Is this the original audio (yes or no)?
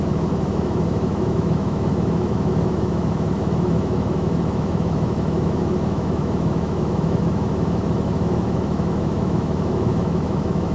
no